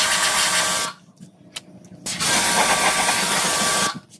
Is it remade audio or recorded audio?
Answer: recorded